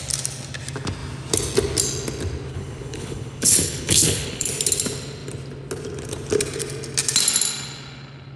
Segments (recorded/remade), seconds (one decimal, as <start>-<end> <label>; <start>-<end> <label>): 0.0-2.5 recorded; 2.5-4.5 remade; 4.5-8.4 recorded